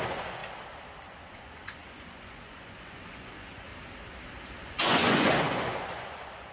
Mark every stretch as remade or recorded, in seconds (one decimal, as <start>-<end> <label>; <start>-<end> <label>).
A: 0.0-0.4 remade; 0.4-1.3 recorded; 1.3-3.7 remade; 3.7-4.7 recorded; 4.7-6.5 remade